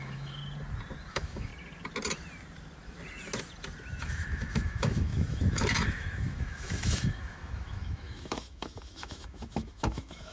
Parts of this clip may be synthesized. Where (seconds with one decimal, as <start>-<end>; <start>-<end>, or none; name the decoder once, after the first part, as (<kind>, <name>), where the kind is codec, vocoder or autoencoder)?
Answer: 0.0-0.4 (autoencoder, DAC-VAE); 1.1-1.5; 4.0-10.3